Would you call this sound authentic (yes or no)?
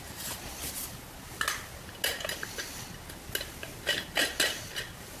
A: yes